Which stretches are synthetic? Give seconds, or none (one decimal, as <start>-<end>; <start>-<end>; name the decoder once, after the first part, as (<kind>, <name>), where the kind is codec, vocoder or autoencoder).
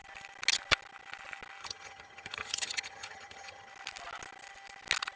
1.6-3.7 (vocoder, HiFi-GAN)